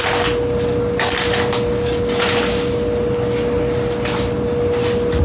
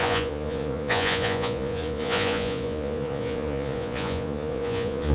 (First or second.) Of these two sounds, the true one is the first